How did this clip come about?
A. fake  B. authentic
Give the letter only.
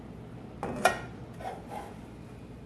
B